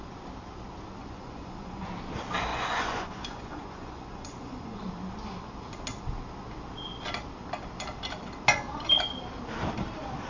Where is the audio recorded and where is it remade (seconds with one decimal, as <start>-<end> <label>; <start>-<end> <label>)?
0.0-1.0 recorded; 1.0-1.9 remade; 1.9-2.5 recorded; 2.5-4.8 remade; 4.8-10.3 recorded